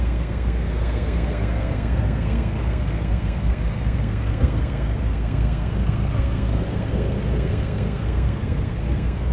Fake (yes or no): yes